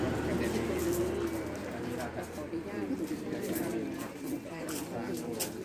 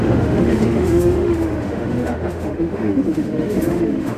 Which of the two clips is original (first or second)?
first